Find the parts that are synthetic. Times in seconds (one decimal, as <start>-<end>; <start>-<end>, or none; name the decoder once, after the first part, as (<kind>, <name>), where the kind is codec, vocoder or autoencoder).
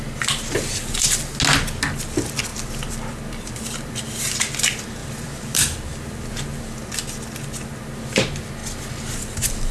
2.5-4.2 (vocoder, BigVGAN v2); 5.0-6.6